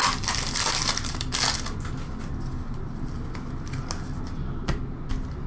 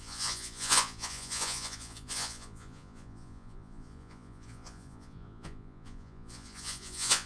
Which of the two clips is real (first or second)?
first